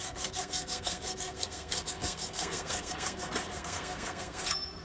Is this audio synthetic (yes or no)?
yes